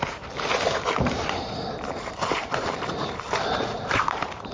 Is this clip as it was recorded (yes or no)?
no